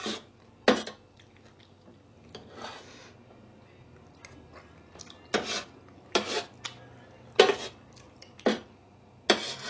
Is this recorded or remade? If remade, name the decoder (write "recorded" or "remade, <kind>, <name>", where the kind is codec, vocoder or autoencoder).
recorded